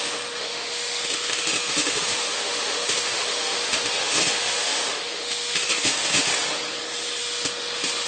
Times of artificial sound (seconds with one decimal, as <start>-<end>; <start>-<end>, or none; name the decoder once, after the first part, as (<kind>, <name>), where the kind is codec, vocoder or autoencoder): 0.0-6.3 (autoencoder, DAC-VAE); 7.2-8.1